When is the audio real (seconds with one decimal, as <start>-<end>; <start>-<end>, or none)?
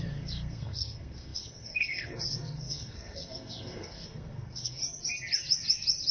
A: 4.8-6.1